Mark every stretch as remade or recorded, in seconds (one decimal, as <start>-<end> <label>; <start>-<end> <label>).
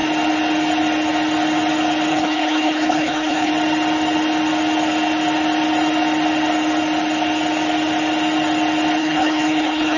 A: 0.0-2.1 recorded; 2.1-3.5 remade; 3.5-9.0 recorded; 9.0-10.0 remade